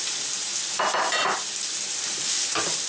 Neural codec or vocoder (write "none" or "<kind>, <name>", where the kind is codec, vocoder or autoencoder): none